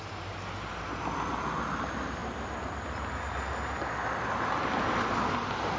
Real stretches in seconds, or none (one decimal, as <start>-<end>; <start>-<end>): 0.0-5.8